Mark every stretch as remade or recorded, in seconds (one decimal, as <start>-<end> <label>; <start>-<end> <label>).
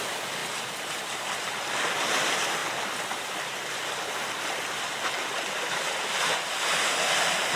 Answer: 0.0-7.6 recorded